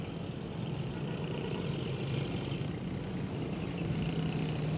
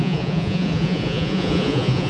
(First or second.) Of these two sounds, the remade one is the second